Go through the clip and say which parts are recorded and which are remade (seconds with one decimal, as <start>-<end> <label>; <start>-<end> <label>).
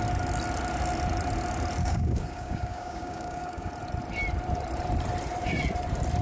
0.0-1.8 recorded; 1.8-3.7 remade; 3.7-6.2 recorded